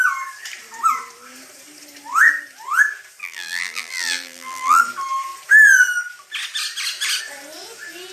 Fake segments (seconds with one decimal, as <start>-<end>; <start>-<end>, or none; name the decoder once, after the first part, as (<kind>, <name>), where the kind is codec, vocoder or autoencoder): 3.2-4.8 (vocoder, BigVGAN v2)